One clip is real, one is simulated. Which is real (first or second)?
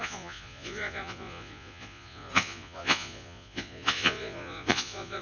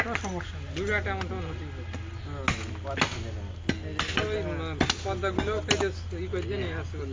second